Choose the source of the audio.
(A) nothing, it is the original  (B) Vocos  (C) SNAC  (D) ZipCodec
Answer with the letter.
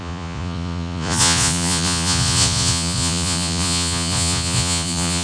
B